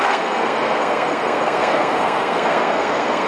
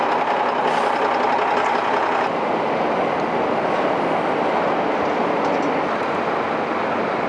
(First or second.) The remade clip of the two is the first